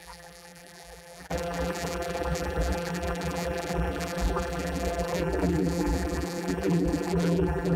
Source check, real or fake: fake